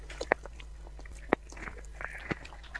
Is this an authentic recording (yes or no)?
yes